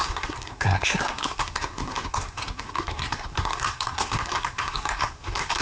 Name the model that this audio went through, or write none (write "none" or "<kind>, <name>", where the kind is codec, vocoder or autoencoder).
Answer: codec, SNAC